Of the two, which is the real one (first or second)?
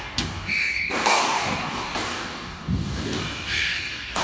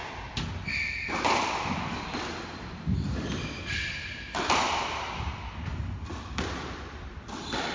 second